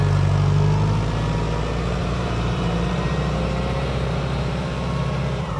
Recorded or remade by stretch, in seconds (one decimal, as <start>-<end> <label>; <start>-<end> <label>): 0.0-2.0 recorded; 2.0-5.6 remade